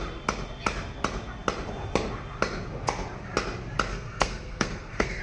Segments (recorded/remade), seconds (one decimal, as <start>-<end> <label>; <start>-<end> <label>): 0.0-3.9 recorded; 3.9-5.2 remade